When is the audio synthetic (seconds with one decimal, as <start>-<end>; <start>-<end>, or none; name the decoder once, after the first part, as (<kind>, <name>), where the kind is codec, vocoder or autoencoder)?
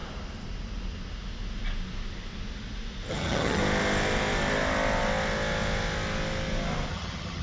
3.1-3.6 (vocoder, HiFi-GAN); 6.9-7.4